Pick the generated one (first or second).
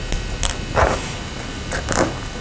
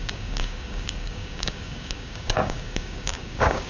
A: second